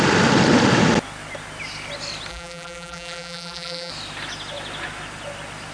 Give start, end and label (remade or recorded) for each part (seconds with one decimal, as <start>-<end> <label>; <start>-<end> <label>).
0.0-2.3 recorded; 2.3-3.9 remade; 3.9-5.7 recorded